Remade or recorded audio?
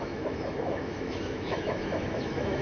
remade